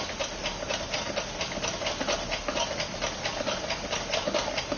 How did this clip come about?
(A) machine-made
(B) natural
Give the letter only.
B